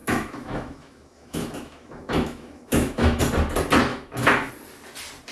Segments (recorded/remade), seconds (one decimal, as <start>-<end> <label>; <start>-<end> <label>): 0.0-3.2 remade; 3.2-3.9 recorded; 3.9-4.5 remade; 4.5-5.3 recorded